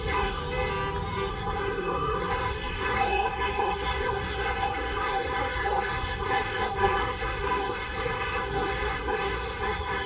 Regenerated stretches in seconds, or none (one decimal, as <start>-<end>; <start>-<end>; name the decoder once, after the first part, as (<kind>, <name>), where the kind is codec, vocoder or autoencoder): 0.0-0.4 (codec, SNAC); 1.3-10.1